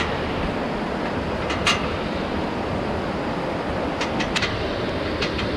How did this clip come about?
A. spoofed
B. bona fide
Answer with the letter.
B